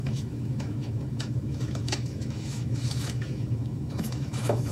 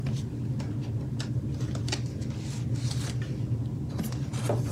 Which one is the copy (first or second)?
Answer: first